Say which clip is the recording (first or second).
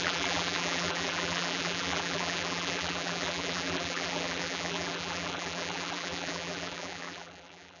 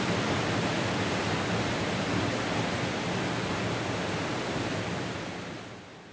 second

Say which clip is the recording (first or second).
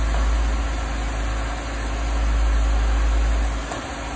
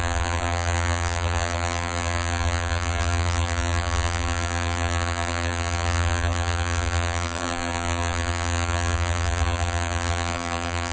first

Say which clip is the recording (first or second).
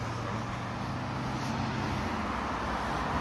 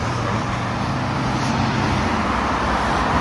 first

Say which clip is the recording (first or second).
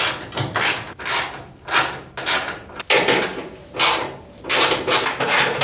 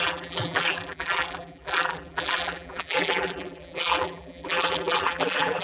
first